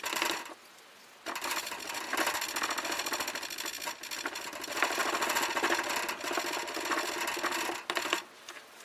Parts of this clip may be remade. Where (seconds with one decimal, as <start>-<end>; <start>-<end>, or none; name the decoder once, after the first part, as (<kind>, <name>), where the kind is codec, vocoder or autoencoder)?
none